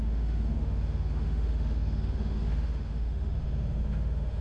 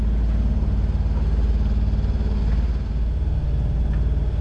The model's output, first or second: first